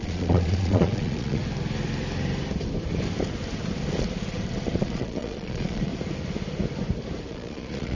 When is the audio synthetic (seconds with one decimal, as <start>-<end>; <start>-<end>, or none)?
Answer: 0.0-1.4; 4.8-5.9; 7.3-7.9